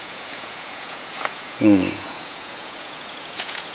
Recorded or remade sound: remade